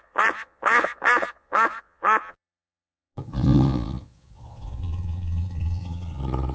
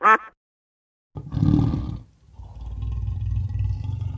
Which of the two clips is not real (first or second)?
first